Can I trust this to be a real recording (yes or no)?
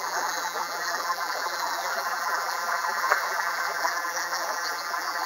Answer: no